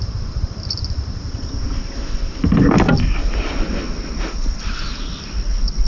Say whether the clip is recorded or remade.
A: recorded